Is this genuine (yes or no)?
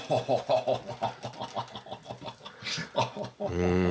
yes